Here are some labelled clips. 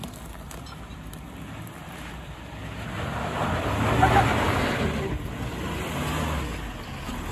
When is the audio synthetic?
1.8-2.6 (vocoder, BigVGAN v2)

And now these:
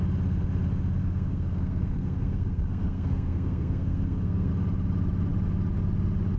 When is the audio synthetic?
1.0-4.5 (codec, SNAC)